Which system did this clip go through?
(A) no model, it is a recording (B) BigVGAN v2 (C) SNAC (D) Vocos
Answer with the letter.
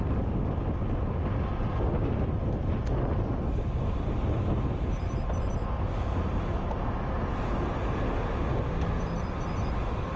A